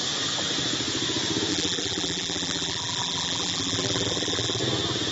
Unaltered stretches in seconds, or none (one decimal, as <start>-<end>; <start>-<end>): 0.0-1.5; 4.6-5.1